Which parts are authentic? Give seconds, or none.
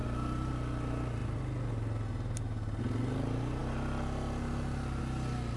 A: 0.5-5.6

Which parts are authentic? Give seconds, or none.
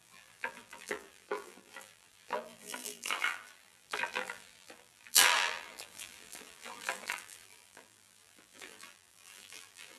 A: none